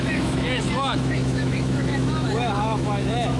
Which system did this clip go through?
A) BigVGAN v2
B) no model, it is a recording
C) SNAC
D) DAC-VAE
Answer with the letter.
D